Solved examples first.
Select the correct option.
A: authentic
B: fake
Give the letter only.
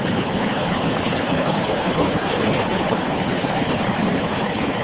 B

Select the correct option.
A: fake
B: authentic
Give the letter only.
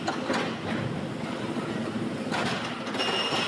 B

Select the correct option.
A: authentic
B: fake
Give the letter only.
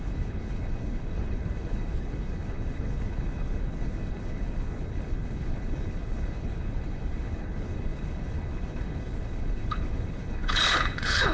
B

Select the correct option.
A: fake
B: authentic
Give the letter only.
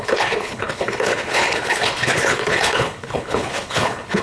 A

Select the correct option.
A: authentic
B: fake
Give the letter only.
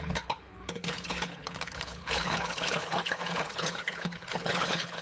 B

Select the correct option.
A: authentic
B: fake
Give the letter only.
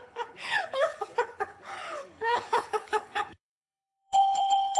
B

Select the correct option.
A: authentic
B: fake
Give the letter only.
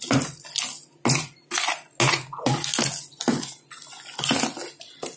A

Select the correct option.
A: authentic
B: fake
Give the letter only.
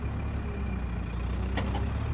A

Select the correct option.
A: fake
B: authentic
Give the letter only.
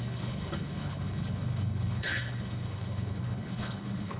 A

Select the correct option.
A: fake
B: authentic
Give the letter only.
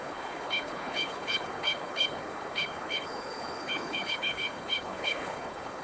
A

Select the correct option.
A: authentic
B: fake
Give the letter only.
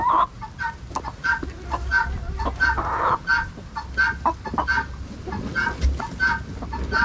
A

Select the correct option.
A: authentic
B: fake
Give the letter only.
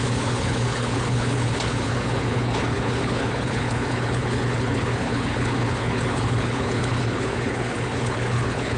B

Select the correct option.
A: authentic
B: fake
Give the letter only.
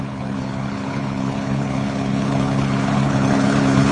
B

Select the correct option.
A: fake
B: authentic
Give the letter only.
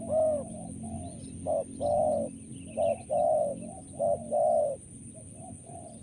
B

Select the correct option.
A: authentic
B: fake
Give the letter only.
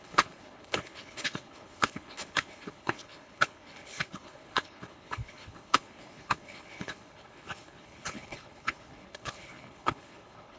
B